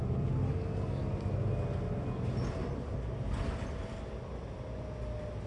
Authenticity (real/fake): real